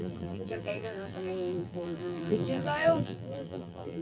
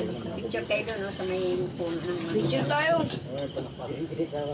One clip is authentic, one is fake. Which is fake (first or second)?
first